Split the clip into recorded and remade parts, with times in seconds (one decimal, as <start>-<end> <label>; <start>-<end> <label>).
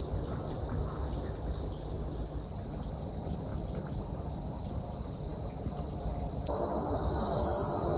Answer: 0.0-8.0 recorded